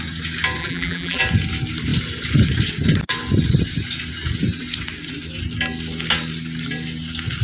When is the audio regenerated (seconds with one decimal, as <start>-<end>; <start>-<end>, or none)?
0.6-1.2